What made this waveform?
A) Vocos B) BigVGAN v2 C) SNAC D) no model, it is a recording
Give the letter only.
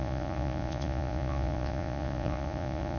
A